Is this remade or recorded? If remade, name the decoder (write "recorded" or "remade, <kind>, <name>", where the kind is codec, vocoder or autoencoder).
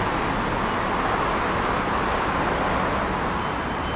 recorded